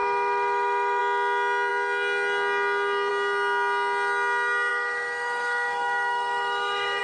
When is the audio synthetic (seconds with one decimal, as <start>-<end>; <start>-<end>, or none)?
0.0-1.0; 4.7-7.0